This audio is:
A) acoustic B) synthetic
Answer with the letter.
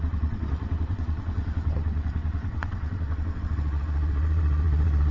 B